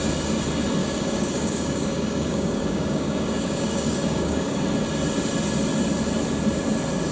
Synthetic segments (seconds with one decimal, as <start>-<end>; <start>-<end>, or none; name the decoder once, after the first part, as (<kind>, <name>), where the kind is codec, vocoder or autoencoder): 0.8-4.6 (codec, DAC)